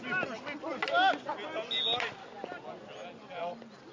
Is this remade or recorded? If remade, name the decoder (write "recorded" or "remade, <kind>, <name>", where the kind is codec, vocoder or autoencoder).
recorded